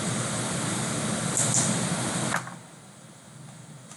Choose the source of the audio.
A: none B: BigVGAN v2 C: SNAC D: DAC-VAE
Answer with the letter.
A